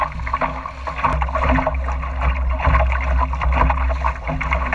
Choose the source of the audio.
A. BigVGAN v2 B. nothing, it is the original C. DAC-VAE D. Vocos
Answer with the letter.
B